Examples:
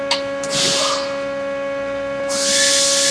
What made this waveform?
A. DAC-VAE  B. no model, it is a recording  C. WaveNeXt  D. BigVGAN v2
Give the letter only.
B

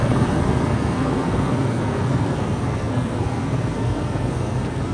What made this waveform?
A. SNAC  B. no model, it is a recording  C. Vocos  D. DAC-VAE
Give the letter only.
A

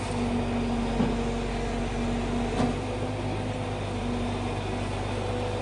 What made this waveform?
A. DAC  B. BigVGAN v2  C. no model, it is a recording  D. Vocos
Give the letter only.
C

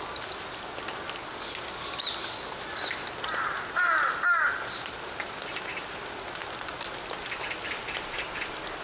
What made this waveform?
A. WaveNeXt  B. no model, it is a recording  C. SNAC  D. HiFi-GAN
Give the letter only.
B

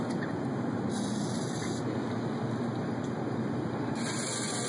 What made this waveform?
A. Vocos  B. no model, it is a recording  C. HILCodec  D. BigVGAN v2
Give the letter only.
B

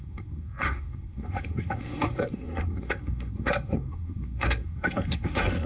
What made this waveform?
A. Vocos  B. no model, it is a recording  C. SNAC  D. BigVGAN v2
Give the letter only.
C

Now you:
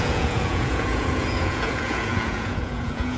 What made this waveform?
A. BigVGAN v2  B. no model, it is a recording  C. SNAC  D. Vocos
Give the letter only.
D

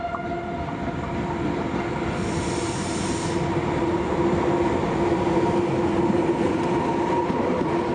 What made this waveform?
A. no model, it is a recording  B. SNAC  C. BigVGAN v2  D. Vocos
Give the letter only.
A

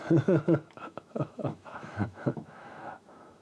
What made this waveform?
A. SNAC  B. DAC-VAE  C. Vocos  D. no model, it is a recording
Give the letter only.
B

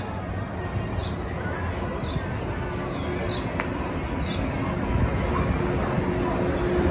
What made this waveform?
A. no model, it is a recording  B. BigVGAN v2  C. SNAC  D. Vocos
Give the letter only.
A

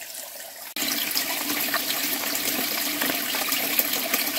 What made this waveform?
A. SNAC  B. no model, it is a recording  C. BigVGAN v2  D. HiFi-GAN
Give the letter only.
B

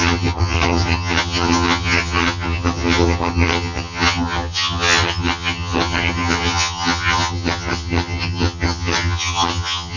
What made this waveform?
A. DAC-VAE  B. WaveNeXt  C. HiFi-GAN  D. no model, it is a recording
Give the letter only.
C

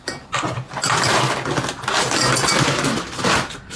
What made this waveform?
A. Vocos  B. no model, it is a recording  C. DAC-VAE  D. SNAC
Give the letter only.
B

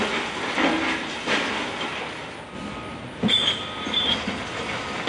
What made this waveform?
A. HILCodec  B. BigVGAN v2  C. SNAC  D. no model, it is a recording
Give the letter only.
D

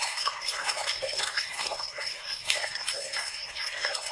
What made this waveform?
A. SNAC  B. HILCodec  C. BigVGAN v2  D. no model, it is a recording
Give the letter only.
A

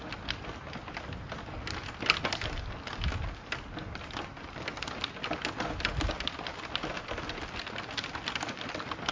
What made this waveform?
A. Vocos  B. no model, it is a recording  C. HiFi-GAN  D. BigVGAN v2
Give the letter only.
B